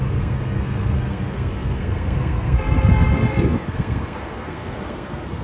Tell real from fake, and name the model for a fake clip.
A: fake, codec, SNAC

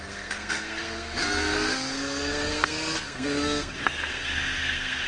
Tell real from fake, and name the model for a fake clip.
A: fake, codec, SNAC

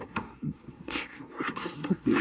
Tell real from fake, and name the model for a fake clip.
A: fake, codec, SNAC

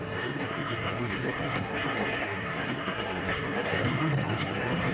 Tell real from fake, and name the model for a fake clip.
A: fake, codec, SNAC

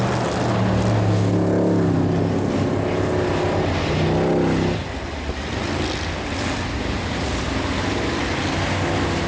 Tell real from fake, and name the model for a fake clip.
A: real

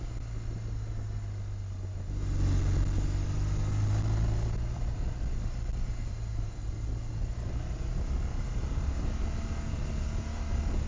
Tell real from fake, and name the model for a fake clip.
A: real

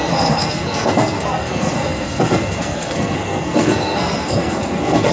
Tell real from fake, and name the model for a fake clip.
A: fake, codec, SNAC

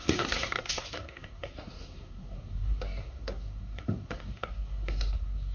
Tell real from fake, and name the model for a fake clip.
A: fake, codec, SNAC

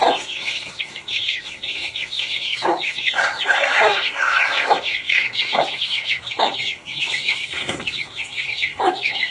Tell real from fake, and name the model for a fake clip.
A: fake, codec, SNAC